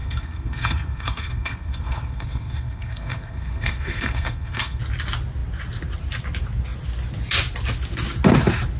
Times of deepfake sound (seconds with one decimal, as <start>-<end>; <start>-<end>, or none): 0.0-4.8